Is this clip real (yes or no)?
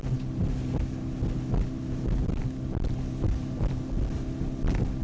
yes